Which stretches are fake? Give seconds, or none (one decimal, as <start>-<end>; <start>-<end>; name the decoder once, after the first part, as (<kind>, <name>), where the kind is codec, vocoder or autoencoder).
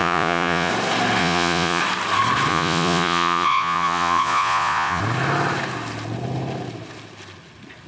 0.0-0.7 (vocoder, Vocos); 1.2-1.8; 2.5-5.0